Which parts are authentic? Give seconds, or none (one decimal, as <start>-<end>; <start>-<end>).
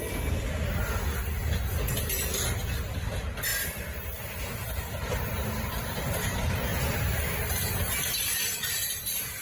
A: 0.0-3.5; 4.3-9.4